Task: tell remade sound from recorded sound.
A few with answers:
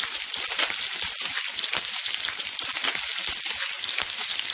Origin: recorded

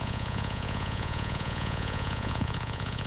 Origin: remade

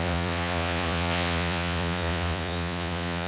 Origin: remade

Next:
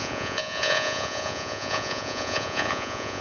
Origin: remade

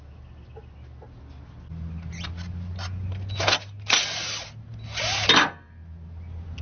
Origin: recorded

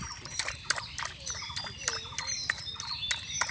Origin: recorded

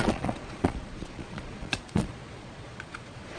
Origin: remade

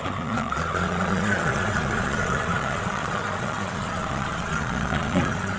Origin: remade